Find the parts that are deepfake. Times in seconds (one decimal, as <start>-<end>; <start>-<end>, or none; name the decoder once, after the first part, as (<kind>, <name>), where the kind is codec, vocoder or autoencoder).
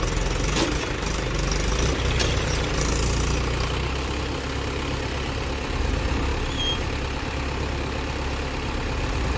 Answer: none